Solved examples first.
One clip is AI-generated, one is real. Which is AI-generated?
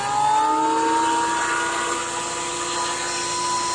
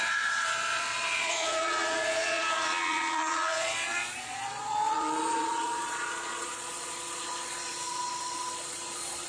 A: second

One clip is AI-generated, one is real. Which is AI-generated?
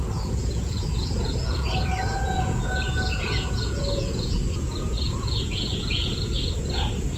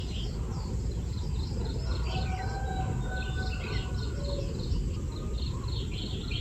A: first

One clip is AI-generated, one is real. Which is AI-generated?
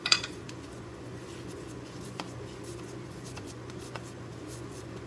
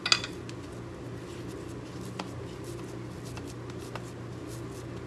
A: first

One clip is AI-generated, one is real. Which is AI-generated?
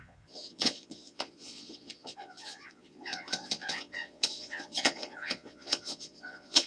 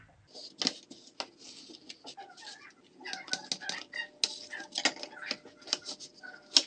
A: first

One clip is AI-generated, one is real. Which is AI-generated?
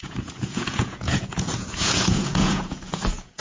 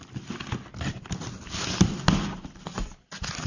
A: first